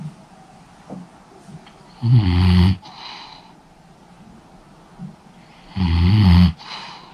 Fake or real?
real